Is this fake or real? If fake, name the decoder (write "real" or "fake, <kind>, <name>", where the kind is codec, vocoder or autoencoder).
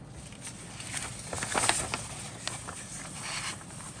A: real